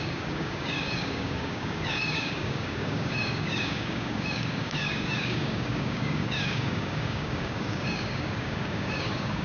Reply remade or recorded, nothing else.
remade